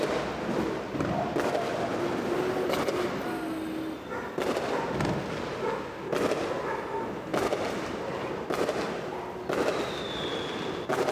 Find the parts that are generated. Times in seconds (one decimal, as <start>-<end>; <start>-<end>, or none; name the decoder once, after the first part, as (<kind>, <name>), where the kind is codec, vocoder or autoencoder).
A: none